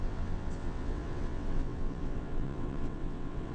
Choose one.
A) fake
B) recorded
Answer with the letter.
A